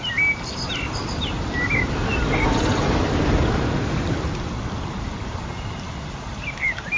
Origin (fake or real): real